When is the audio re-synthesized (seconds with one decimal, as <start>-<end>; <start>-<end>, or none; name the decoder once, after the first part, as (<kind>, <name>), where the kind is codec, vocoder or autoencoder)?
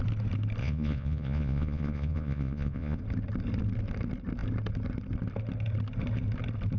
0.6-3.0 (vocoder, Vocos)